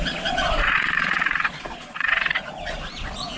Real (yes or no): no